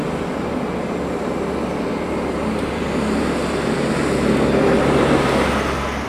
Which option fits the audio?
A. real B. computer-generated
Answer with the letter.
A